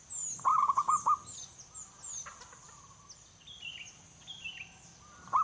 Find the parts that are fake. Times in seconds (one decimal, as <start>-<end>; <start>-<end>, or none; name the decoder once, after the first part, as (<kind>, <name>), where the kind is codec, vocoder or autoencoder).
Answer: 0.5-1.1 (codec, DAC)